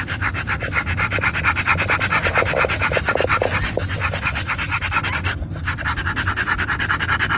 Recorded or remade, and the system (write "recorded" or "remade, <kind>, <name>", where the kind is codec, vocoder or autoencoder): recorded